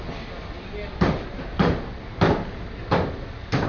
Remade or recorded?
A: recorded